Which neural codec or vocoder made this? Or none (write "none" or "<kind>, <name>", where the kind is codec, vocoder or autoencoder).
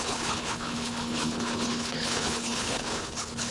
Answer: codec, HILCodec